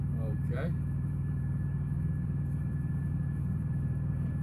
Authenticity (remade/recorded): remade